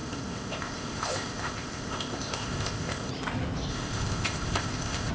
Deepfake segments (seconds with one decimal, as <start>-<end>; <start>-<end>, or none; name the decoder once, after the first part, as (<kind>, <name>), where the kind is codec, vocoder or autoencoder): 0.0-3.1 (codec, ZipCodec); 3.7-5.1